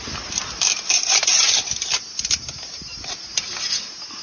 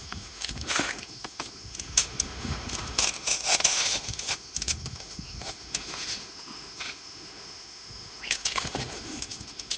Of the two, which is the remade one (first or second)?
second